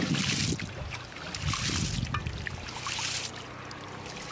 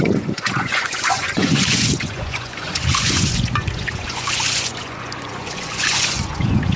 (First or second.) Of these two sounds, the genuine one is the first